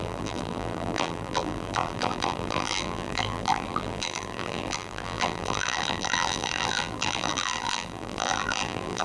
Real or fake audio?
fake